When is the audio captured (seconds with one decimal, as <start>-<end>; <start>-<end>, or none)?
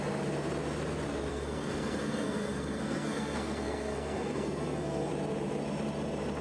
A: 0.0-1.3; 5.1-6.4